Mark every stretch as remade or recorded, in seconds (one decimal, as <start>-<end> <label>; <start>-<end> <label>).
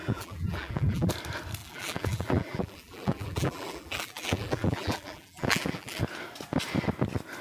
0.0-1.1 remade; 1.1-1.6 recorded; 1.6-6.0 remade; 6.0-7.4 recorded